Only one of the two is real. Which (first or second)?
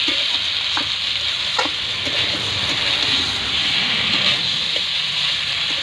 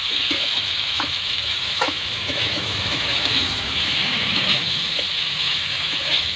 first